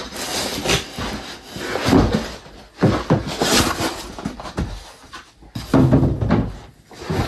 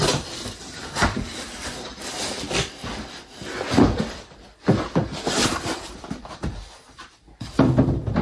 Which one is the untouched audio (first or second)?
first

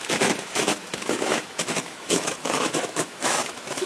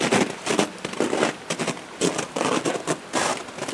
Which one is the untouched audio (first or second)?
second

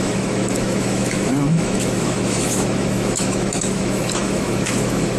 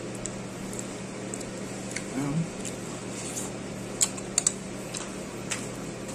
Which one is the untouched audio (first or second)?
second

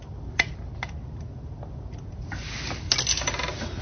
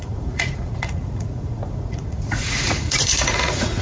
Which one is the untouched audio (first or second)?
first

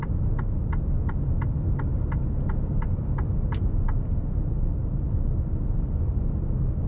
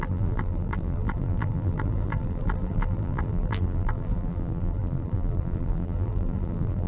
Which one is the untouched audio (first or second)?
first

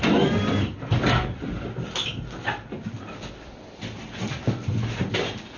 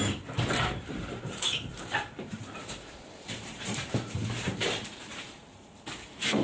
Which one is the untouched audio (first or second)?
first